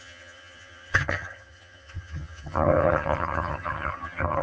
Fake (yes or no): yes